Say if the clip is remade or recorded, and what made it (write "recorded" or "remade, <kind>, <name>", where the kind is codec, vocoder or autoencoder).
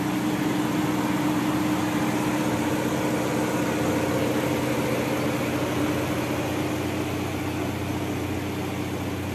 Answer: recorded